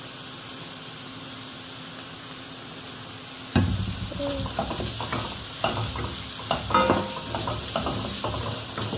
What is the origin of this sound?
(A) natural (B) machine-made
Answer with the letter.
A